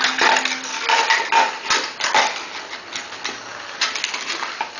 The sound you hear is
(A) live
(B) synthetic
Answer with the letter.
A